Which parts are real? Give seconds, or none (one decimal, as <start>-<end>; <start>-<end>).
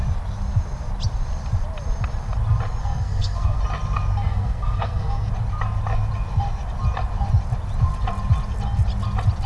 0.0-2.8; 3.6-4.3; 5.3-9.5